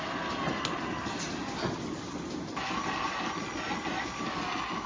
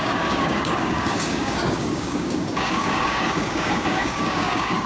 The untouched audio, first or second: first